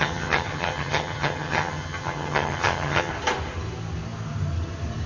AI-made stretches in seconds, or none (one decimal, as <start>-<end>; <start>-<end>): 0.0-3.1